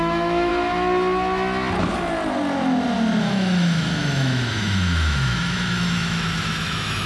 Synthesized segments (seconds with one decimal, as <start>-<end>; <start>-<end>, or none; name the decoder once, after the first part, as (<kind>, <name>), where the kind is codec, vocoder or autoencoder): 0.0-0.5 (autoencoder, DAC-VAE); 3.2-7.1